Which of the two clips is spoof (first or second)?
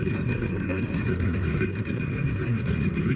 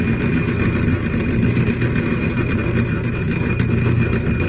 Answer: first